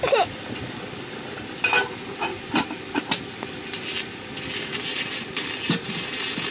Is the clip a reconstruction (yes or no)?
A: no